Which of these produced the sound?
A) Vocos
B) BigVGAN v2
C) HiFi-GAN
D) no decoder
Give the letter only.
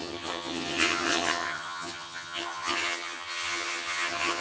C